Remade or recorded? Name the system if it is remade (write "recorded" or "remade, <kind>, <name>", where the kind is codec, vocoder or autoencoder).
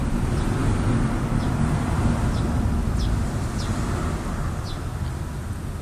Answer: recorded